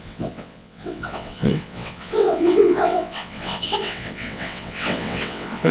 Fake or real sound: fake